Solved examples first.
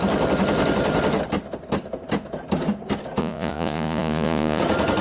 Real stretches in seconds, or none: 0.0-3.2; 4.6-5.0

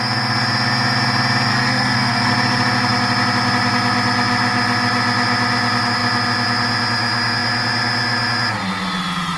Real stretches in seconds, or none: 0.0-1.5; 2.3-9.4

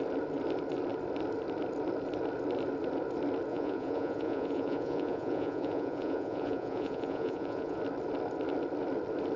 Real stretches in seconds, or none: 0.0-3.5; 7.8-9.4

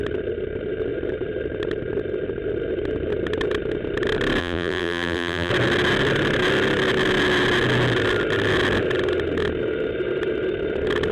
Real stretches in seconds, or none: 0.0-4.4; 5.5-11.1